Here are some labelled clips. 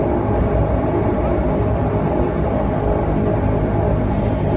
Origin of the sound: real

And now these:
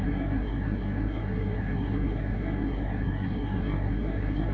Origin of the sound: fake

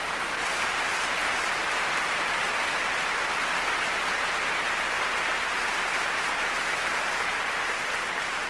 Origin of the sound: real